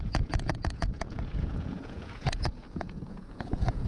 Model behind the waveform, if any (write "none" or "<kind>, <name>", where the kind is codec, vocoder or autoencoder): vocoder, Vocos